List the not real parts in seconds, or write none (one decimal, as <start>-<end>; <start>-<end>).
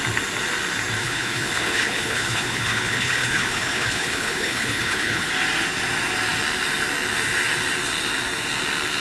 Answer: 1.0-5.3